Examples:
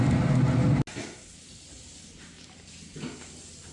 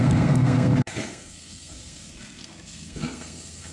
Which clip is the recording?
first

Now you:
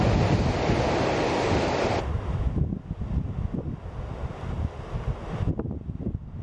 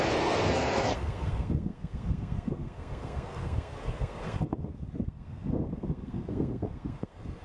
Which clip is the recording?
first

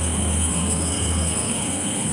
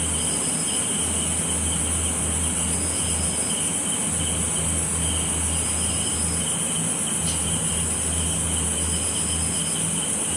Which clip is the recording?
second